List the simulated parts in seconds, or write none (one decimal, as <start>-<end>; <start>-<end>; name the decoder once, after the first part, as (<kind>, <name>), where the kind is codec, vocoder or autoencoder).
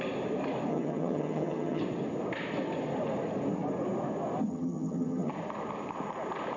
0.7-1.8 (vocoder, HiFi-GAN); 4.5-5.3